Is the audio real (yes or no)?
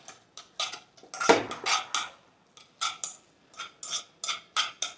yes